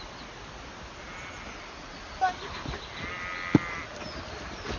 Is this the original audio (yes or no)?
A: yes